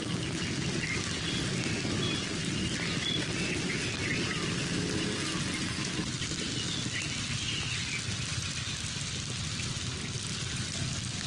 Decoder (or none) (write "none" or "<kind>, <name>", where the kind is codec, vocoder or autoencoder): none